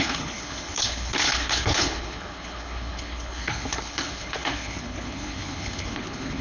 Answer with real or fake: fake